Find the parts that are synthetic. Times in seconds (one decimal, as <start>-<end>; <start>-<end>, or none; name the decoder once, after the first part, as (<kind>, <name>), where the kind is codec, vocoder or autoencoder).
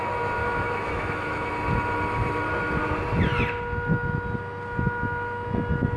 0.4-1.5 (autoencoder, DAC-VAE)